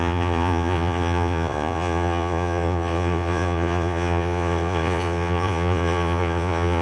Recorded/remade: remade